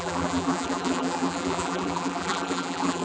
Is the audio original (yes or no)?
no